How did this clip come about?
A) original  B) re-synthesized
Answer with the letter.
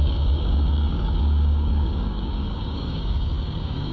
B